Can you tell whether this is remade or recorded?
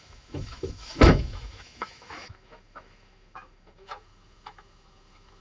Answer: remade